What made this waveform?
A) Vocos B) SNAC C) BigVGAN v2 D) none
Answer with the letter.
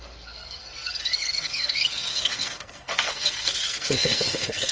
B